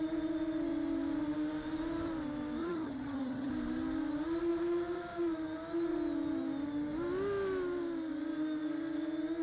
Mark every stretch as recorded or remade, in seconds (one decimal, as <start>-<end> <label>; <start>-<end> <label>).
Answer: 0.0-2.6 recorded; 2.6-3.5 remade; 3.5-9.4 recorded